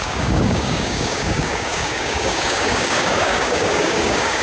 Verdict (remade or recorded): remade